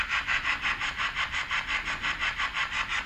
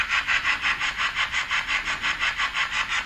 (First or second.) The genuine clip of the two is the second